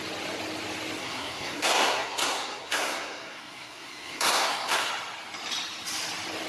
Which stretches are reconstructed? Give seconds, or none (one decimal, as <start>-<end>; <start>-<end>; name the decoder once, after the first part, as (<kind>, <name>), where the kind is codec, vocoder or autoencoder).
1.0-4.9 (codec, SNAC)